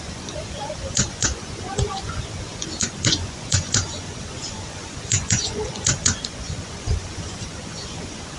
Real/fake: fake